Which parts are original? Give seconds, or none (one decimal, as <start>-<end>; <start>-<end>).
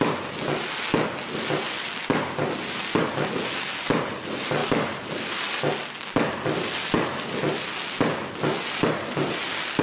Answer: 0.0-9.8